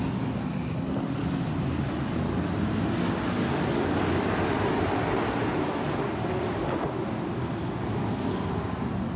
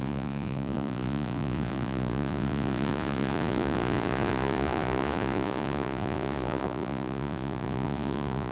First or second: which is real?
first